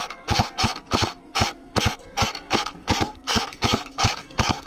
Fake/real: fake